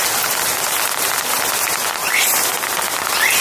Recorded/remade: recorded